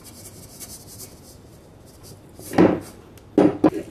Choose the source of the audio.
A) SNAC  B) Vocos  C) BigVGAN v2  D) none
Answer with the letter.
D